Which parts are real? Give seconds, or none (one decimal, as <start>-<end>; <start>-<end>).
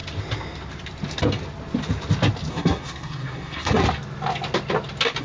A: 0.0-2.5; 3.8-5.2